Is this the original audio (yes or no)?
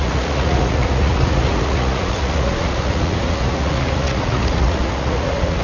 no